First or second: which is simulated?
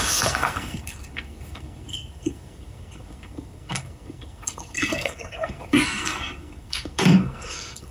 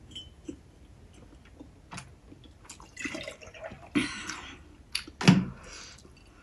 first